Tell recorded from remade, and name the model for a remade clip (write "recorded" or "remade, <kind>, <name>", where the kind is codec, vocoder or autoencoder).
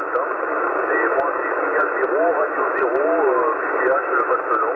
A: recorded